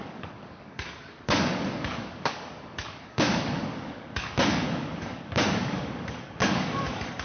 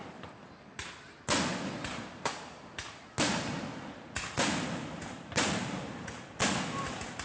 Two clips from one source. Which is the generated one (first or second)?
first